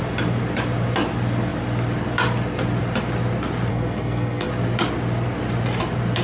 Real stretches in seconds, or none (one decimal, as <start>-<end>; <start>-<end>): 0.0-3.7; 4.5-6.2